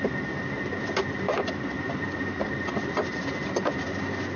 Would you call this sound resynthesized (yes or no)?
no